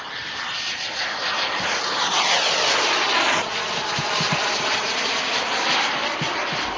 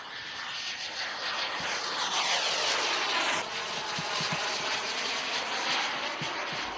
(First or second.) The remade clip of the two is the first